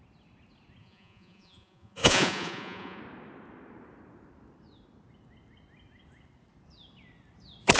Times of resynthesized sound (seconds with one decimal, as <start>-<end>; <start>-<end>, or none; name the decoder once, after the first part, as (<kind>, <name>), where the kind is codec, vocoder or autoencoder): 0.8-3.0 (vocoder, Vocos)